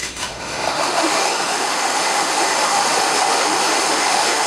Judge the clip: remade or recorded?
remade